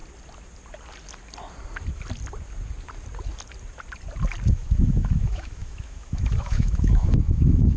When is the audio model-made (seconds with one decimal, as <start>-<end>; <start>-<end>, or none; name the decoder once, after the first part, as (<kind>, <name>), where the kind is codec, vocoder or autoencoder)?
4.5-7.8 (autoencoder, DAC-VAE)